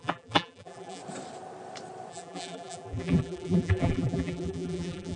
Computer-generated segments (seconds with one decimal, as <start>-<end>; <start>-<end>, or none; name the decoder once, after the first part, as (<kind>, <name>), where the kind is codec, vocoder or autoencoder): 0.0-1.0 (vocoder, BigVGAN v2); 2.1-5.2